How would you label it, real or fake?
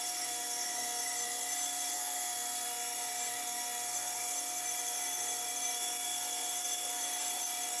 fake